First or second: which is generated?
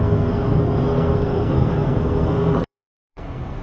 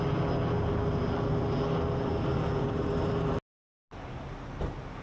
first